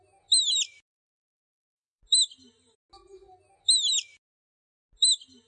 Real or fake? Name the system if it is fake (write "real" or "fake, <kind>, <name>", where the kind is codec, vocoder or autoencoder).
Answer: real